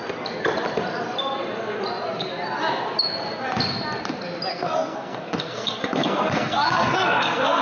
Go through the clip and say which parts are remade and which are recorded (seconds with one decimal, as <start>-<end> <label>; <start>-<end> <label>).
0.0-4.5 recorded; 4.5-7.6 remade